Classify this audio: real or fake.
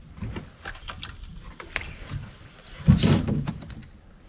real